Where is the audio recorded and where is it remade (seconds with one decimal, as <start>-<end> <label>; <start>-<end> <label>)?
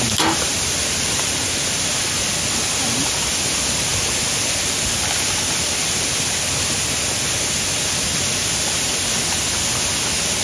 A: 0.0-10.4 recorded